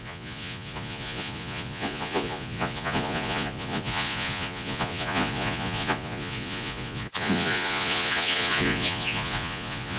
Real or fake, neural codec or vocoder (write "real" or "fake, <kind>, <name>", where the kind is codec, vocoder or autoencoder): fake, vocoder, Vocos